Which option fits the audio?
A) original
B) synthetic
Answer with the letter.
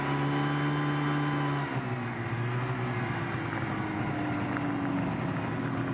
A